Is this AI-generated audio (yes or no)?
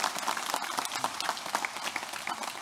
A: no